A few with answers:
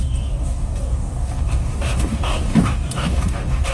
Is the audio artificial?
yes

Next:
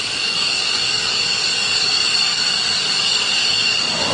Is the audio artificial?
yes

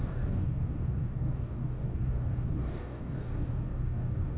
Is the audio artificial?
yes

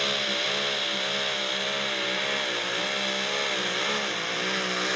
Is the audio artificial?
no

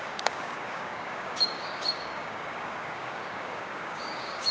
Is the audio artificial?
yes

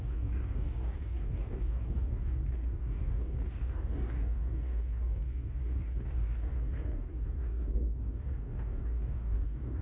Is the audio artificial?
yes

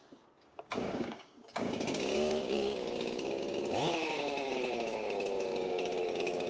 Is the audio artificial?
yes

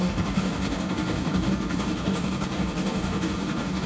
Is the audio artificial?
yes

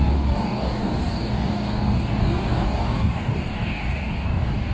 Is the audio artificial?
yes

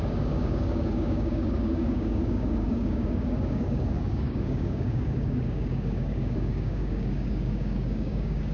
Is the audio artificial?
yes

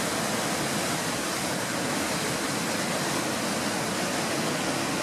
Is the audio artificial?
no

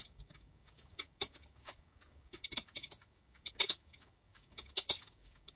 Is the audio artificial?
yes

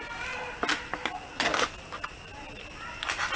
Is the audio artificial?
no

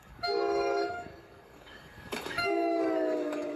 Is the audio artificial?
yes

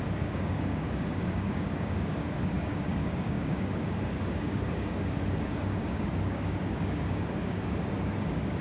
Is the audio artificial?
yes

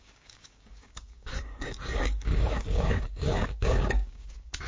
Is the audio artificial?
yes